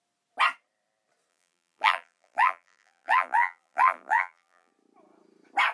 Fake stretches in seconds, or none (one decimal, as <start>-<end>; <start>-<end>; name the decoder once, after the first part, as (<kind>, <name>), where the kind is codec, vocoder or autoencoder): 1.3-4.7 (vocoder, BigVGAN v2)

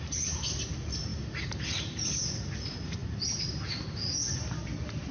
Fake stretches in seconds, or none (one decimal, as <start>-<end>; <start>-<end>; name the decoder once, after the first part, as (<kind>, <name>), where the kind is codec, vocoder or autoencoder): none

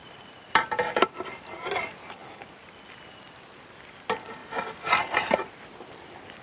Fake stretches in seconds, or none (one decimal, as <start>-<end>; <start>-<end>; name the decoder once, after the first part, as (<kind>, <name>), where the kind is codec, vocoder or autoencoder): 0.0-1.6 (vocoder, BigVGAN v2); 4.4-5.0

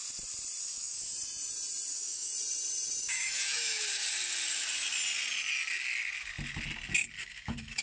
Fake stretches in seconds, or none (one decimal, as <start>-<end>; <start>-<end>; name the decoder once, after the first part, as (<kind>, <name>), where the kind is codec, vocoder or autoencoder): 0.6-1.1 (autoencoder, DAC-VAE); 1.9-2.3; 3.0-4.0; 7.2-7.8

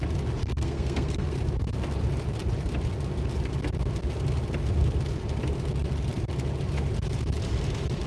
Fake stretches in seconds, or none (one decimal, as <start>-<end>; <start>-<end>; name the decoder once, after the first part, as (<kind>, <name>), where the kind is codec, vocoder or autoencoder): 0.4-1.4 (codec, SNAC)

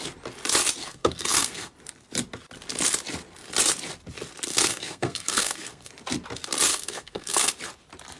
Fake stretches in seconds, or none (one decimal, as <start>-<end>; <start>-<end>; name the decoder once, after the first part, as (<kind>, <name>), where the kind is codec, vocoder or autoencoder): 0.8-1.7 (codec, SNAC); 4.5-5.9; 6.7-7.5

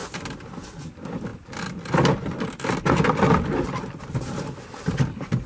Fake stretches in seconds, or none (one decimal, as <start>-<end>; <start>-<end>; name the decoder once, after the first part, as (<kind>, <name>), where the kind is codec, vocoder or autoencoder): none